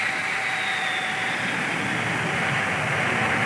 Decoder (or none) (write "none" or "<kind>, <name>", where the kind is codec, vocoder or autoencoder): none